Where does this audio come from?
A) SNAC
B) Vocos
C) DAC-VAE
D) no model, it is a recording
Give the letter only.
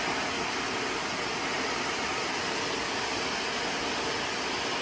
D